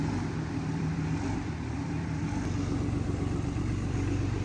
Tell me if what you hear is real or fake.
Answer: fake